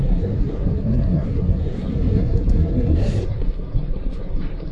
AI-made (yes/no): yes